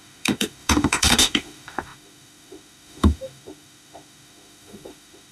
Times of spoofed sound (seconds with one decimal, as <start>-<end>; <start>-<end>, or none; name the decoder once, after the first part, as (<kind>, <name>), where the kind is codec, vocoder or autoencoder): 0.0-5.3 (autoencoder, DAC-VAE)